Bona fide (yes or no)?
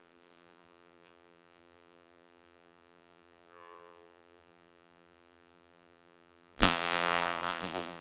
no